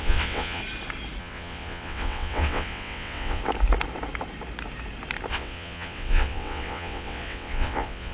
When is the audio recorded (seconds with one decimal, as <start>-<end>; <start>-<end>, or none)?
0.6-1.2; 3.4-5.3